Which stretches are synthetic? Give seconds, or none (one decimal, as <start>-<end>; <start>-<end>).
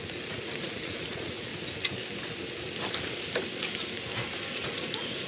0.0-1.5; 4.5-5.3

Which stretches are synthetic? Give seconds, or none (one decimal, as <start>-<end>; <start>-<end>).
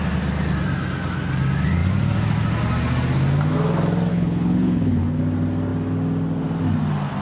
4.1-5.2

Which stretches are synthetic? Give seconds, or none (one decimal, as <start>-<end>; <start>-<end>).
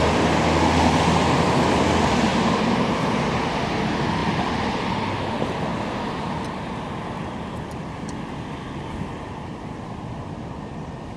2.3-3.6